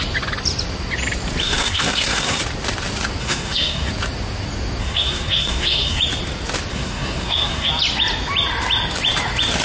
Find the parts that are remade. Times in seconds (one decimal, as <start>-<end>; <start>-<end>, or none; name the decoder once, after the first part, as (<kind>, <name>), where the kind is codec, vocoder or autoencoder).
1.4-2.4 (codec, SNAC); 3.2-3.9; 4.8-6.0; 6.7-7.7